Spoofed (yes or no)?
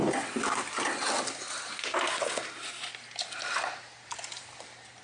no